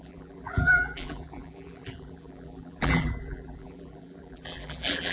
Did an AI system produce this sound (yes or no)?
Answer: yes